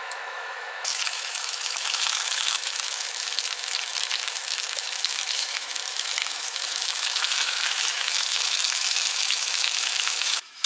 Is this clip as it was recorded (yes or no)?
no